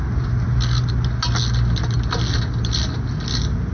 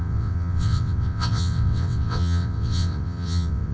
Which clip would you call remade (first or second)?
second